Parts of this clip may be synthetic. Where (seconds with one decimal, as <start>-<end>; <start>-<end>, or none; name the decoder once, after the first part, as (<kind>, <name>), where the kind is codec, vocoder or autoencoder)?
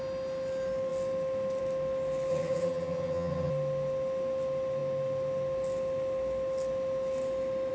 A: 2.3-3.5 (vocoder, HiFi-GAN)